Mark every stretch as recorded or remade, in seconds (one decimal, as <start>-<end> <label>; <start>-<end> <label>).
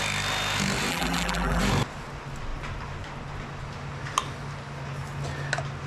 0.0-0.9 recorded; 0.9-1.6 remade; 1.6-5.9 recorded